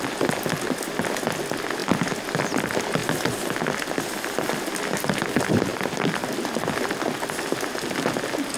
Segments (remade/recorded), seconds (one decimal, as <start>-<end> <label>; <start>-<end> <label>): 0.0-5.7 recorded; 5.7-8.2 remade; 8.2-8.6 recorded